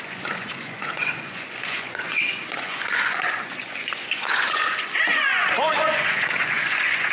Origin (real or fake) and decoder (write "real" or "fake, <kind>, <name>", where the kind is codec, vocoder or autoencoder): fake, vocoder, Vocos